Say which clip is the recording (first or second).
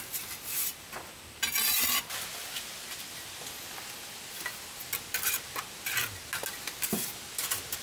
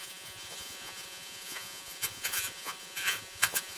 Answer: first